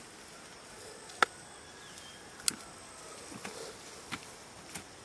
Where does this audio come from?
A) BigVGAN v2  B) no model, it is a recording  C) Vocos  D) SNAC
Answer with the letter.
B